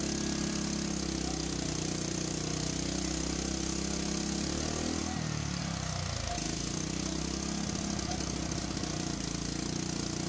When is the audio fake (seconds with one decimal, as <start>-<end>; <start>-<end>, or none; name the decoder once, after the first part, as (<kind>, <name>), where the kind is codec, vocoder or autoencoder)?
none